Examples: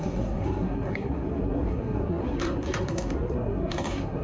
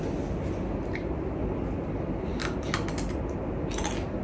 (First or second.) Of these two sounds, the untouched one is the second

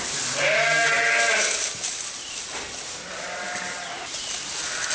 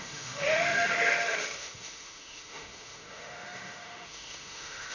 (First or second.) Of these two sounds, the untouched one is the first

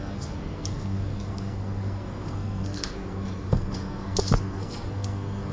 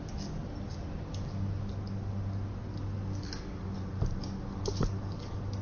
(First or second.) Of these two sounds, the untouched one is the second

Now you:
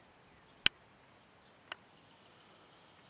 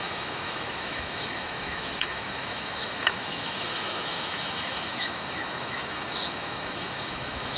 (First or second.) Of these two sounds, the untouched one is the first